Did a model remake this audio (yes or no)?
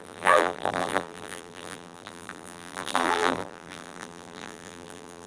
yes